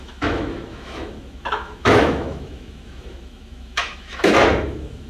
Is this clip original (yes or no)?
no